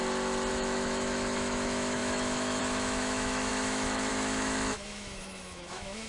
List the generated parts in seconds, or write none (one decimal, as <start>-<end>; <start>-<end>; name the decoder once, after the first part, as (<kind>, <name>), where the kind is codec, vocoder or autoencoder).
0.5-6.1 (autoencoder, DAC-VAE)